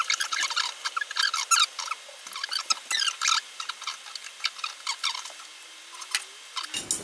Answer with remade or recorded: recorded